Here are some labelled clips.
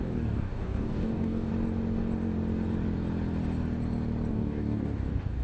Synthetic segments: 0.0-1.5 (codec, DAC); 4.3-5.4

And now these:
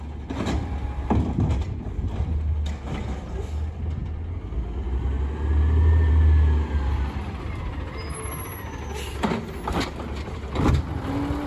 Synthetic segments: none

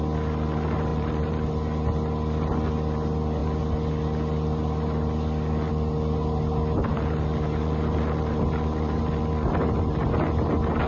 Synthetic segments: 0.9-1.5 (vocoder, BigVGAN v2); 6.9-9.0

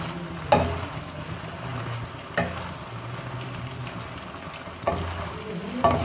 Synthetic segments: none

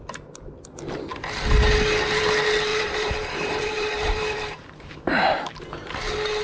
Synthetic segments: 2.7-5.6 (vocoder, BigVGAN v2)

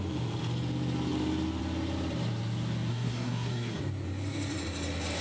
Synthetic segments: 2.9-3.8 (codec, SNAC)